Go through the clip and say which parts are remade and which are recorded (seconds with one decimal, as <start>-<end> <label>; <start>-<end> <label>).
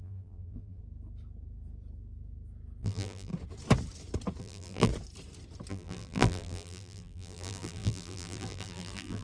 0.0-0.8 remade; 0.8-2.8 recorded; 2.8-3.3 remade; 3.3-4.4 recorded; 4.4-4.9 remade; 4.9-5.7 recorded; 5.7-9.2 remade